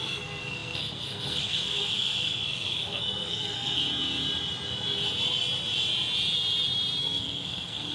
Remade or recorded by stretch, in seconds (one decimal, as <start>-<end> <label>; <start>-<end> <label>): 0.0-3.8 remade; 3.8-7.0 recorded; 7.0-7.9 remade